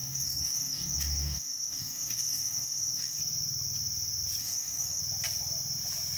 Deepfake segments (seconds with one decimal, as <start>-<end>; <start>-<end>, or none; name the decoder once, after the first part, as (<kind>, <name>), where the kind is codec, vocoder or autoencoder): 0.0-3.2 (codec, DAC); 4.4-5.0